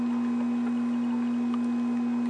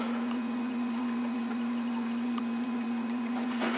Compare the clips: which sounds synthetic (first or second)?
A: second